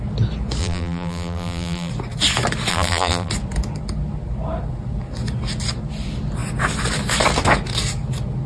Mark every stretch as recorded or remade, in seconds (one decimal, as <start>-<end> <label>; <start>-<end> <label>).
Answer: 0.0-0.6 recorded; 0.6-1.9 remade; 1.9-2.7 recorded; 2.7-3.3 remade; 3.3-8.5 recorded